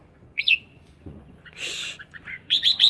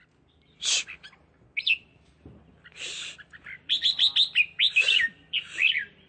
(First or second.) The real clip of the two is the second